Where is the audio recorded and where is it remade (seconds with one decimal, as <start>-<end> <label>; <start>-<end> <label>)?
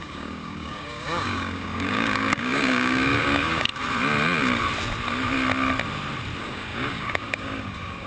0.0-3.7 remade; 3.7-6.4 recorded; 6.4-8.1 remade